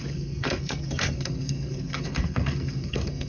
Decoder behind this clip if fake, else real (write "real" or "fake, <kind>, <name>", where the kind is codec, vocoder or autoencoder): fake, codec, SNAC